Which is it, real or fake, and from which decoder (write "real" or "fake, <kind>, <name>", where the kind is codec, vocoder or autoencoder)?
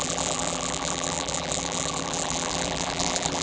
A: fake, vocoder, BigVGAN v2